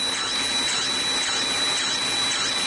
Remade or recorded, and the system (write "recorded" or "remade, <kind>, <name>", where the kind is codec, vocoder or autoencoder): recorded